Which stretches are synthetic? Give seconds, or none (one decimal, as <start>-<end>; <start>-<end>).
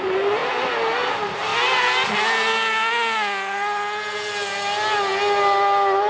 none